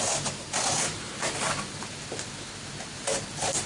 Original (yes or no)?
yes